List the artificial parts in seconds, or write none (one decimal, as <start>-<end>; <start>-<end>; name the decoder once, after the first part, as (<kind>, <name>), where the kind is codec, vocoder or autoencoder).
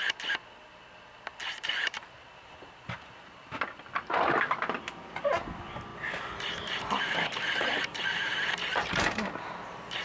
1.4-3.4 (vocoder, BigVGAN v2); 5.9-6.8; 7.9-10.0